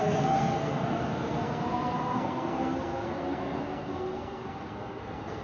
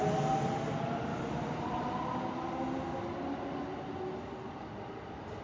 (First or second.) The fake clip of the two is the first